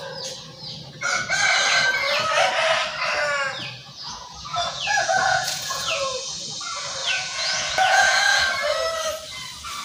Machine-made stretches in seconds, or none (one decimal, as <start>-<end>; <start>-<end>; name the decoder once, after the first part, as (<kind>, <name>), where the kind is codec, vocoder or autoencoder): 3.8-6.1 (vocoder, Vocos); 7.0-8.4